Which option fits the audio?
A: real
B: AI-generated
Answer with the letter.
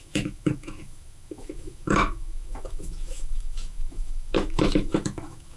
B